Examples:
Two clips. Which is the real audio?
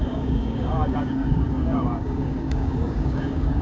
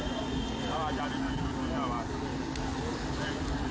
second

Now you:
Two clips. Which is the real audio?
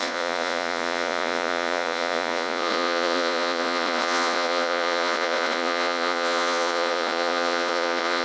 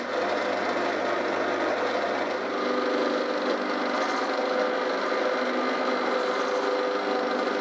second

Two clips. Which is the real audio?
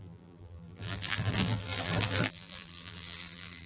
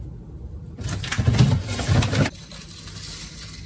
second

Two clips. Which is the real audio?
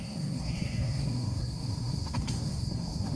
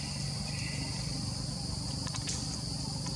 second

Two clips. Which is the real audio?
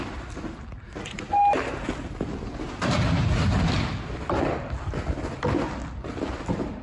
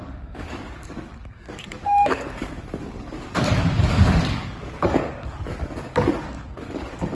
first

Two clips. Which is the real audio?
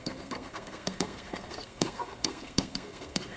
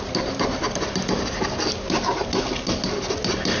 second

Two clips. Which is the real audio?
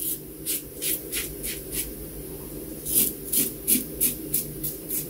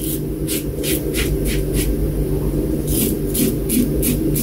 second